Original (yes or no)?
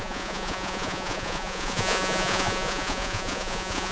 no